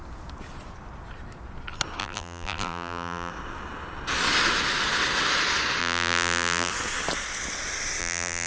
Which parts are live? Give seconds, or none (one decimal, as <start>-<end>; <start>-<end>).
0.0-2.0; 3.3-5.8; 6.7-8.0